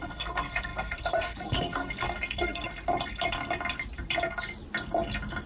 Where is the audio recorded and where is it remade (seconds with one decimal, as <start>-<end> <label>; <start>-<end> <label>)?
0.0-2.7 remade; 2.7-5.5 recorded